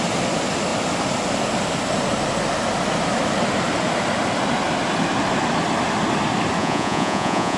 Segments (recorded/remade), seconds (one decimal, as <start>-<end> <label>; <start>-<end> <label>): 0.0-6.6 recorded; 6.6-7.6 remade